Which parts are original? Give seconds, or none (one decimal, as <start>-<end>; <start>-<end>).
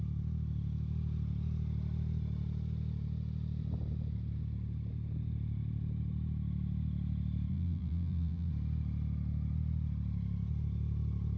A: 0.0-7.5; 8.5-11.4